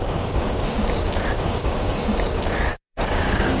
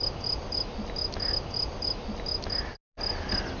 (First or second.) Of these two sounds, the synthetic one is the first